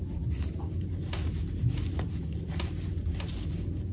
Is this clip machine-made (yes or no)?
no